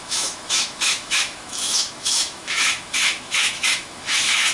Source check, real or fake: fake